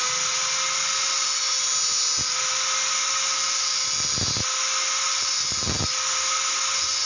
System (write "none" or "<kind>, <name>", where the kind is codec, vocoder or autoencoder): none